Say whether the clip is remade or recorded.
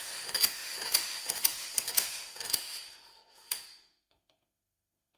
remade